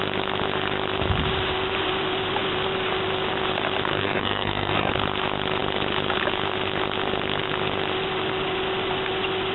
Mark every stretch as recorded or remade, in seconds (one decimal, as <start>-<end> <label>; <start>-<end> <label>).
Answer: 0.0-3.9 recorded; 3.9-4.9 remade; 4.9-9.5 recorded